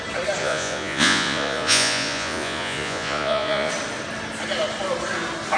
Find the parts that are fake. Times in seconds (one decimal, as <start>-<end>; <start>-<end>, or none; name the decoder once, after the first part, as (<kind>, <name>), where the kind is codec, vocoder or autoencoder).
0.4-3.7 (vocoder, Vocos)